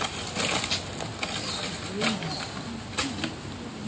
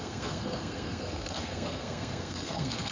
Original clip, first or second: first